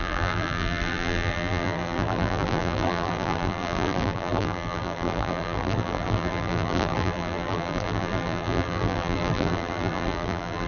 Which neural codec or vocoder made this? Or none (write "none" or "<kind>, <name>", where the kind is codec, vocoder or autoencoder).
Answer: vocoder, BigVGAN v2